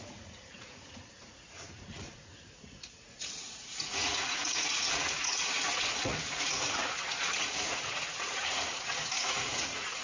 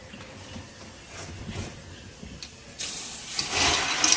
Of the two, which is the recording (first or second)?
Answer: second